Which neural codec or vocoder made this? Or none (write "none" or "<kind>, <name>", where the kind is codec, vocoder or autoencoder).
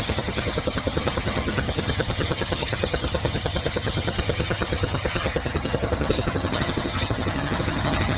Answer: vocoder, HiFi-GAN